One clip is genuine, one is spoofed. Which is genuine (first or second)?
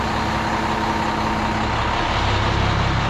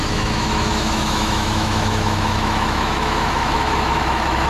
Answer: first